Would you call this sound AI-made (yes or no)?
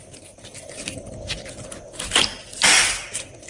no